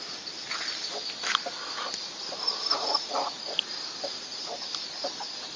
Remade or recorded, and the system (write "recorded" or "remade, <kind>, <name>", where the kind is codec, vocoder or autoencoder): remade, vocoder, BigVGAN v2